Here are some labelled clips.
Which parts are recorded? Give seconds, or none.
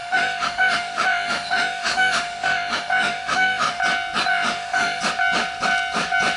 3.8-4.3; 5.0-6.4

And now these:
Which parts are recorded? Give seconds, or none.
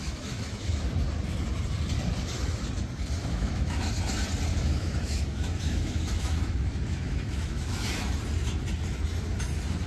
0.8-3.2; 3.9-4.5; 8.2-9.9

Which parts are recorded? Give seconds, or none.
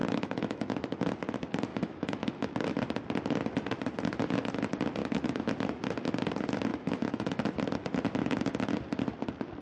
1.1-1.7; 2.5-5.0; 5.5-6.7; 7.4-9.6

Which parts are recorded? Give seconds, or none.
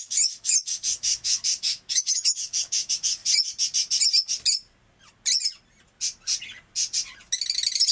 3.2-7.9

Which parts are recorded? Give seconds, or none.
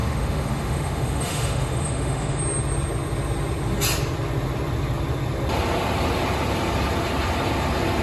2.4-8.0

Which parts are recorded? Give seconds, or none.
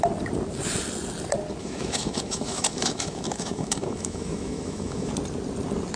0.0-1.6; 5.1-6.0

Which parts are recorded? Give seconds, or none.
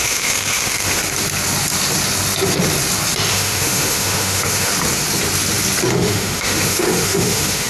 1.0-3.3; 4.7-5.9